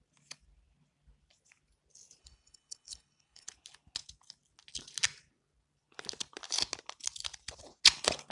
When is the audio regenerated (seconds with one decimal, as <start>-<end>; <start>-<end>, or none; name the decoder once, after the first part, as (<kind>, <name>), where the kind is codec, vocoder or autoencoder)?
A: 2.2-3.5 (codec, HILCodec)